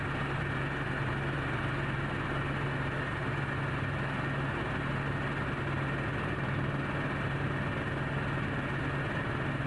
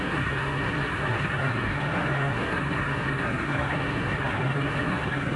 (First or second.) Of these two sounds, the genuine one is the first